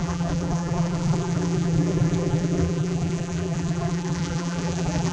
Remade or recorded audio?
remade